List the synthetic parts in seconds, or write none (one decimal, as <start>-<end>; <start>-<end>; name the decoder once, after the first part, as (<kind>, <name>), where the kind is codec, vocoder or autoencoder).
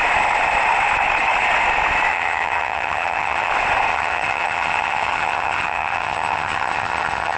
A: 2.1-3.5 (vocoder, HiFi-GAN); 3.9-7.4